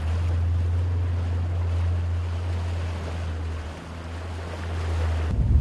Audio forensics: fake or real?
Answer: real